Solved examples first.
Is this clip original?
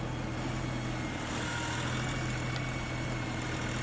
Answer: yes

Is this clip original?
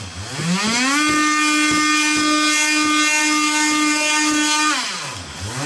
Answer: yes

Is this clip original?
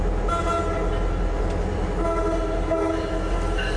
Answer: yes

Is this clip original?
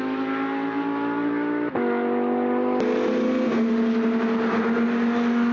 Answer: yes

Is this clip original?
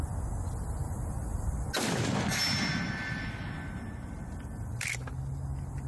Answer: yes